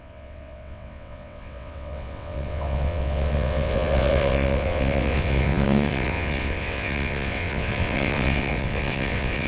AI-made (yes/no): yes